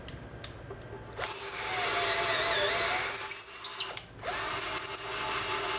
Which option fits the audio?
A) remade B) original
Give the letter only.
B